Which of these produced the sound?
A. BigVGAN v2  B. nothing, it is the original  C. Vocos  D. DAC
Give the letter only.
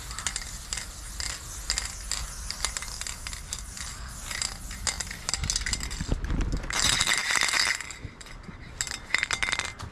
B